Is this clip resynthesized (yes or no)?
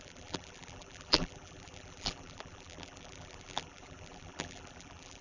yes